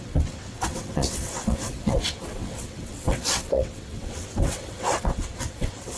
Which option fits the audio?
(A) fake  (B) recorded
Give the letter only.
A